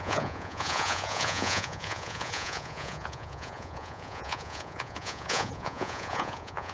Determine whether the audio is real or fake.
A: fake